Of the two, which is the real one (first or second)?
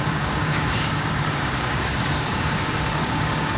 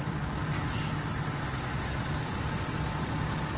second